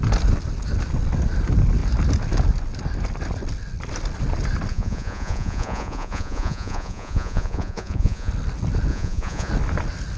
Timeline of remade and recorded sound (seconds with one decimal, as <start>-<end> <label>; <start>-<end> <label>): 0.0-4.7 recorded; 4.7-8.3 remade; 8.3-8.9 recorded; 8.9-9.5 remade; 9.5-10.2 recorded